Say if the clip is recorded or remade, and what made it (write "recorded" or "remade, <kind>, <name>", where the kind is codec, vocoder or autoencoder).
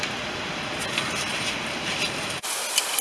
recorded